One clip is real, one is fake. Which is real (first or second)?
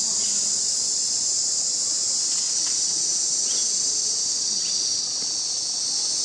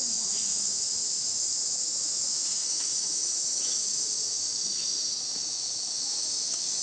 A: first